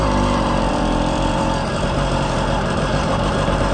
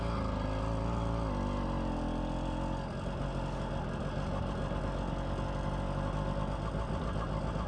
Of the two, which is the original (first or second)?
second